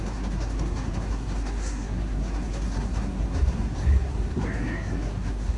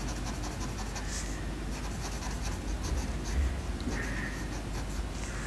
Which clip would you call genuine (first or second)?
second